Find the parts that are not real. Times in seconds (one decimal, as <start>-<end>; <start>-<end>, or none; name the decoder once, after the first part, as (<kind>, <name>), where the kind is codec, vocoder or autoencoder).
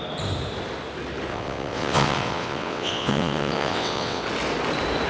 1.3-4.2 (vocoder, WaveNeXt)